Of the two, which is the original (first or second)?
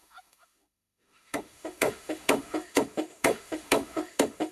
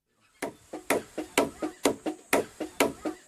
second